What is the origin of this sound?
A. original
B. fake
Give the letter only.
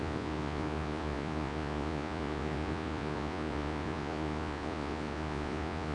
B